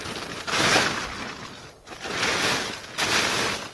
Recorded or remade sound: recorded